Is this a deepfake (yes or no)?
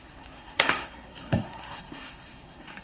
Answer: yes